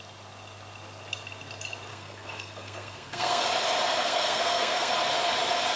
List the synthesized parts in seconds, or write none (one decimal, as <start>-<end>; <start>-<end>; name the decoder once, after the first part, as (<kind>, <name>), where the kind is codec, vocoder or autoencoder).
1.9-3.4 (codec, SNAC); 4.0-4.9